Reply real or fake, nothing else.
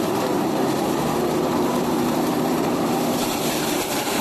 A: fake